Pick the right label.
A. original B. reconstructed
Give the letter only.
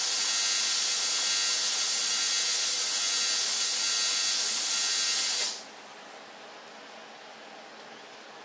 A